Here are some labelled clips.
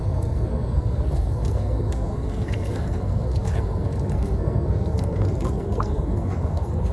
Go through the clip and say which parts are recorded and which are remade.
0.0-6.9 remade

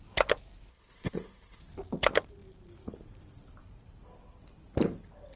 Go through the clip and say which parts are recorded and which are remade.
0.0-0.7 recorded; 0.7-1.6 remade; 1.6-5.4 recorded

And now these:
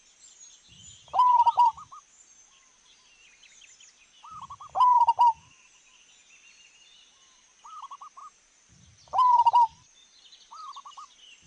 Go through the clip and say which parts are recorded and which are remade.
0.0-0.8 recorded; 0.8-1.9 remade; 1.9-8.2 recorded; 8.2-9.5 remade; 9.5-11.5 recorded

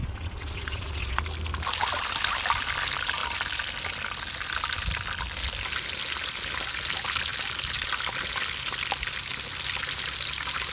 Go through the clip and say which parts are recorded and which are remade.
0.0-1.2 remade; 1.2-10.7 recorded

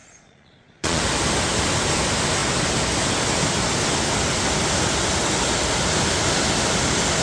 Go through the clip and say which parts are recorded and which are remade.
0.0-1.0 remade; 1.0-7.2 recorded